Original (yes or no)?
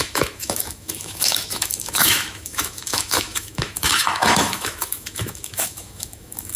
no